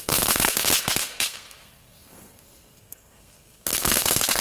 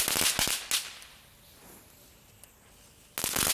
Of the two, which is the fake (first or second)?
first